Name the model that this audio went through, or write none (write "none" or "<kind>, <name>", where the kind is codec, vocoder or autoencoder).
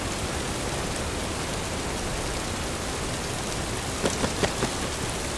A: none